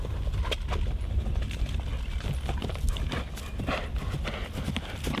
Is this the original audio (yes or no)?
yes